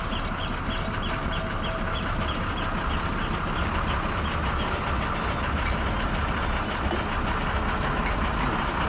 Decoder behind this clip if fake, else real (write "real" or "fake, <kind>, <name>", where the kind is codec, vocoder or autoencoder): real